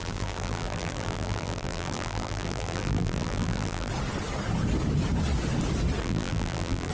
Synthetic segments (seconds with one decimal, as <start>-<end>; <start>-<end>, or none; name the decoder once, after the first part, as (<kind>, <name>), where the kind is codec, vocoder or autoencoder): 0.0-3.9 (vocoder, BigVGAN v2); 6.0-6.9